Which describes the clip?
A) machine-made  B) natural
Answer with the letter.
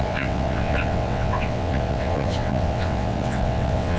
A